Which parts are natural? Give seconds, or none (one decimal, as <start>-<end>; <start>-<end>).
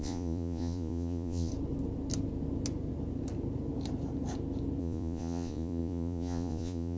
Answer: 1.5-4.8